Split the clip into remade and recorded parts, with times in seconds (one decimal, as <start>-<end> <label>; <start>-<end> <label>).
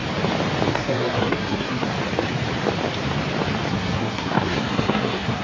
0.0-0.7 recorded; 0.7-1.9 remade; 1.9-3.7 recorded; 3.7-5.4 remade